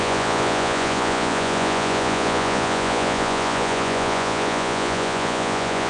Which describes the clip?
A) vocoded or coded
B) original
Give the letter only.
A